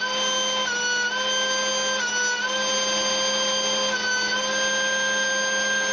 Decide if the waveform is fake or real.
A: real